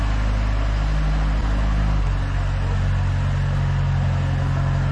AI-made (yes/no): no